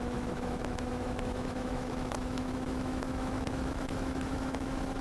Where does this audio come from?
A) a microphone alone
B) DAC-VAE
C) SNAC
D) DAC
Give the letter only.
B